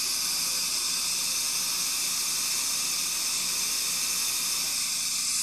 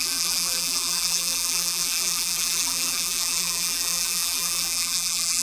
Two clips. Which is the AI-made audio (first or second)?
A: second